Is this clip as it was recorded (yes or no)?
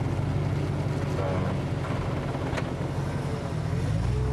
yes